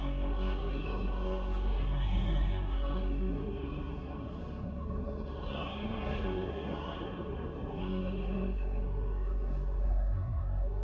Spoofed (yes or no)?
yes